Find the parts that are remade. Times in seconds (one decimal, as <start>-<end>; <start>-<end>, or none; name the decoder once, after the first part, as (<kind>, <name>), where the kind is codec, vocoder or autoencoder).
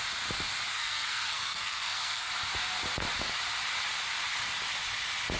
0.7-2.3 (codec, SNAC)